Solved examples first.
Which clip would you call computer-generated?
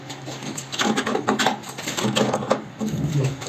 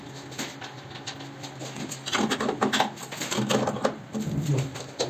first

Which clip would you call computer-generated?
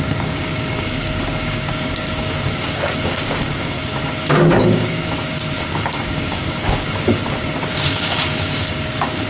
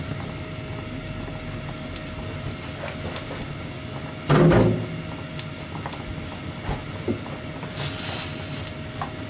first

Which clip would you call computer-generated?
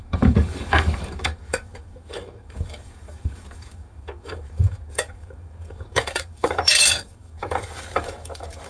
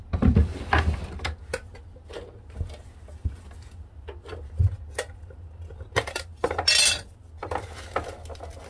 first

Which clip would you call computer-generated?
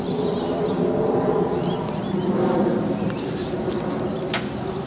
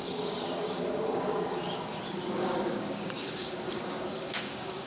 second